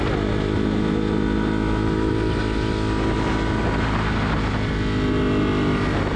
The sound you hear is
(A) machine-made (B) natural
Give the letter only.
B